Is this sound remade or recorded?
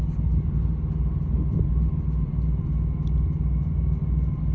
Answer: recorded